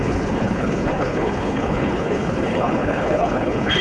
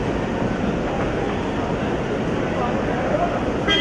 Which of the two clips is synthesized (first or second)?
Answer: first